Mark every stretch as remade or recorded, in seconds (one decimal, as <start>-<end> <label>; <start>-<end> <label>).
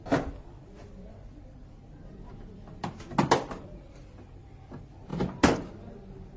0.0-6.4 recorded